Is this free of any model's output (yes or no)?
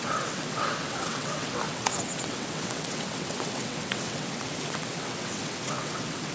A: no